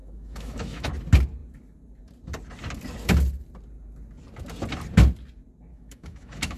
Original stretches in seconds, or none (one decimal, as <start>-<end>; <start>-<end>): 0.9-5.7